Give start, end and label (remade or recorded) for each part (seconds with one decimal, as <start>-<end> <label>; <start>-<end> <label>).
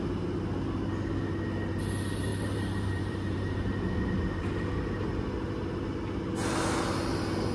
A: 0.0-2.3 recorded; 2.3-3.6 remade; 3.6-7.5 recorded